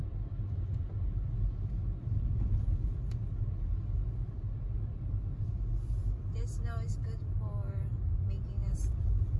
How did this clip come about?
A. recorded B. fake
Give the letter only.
A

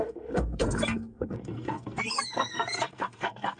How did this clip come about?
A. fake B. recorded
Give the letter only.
A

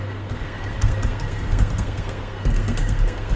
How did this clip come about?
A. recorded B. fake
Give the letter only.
B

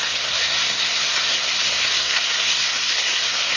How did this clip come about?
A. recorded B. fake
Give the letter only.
B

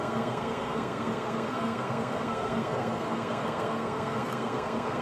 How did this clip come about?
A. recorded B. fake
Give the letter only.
B